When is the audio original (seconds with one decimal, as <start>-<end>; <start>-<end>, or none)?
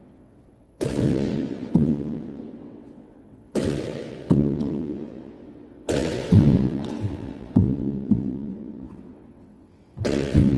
none